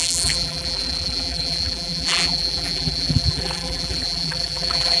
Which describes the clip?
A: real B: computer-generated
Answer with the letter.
B